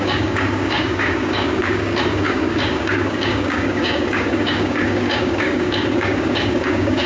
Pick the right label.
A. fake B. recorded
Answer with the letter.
A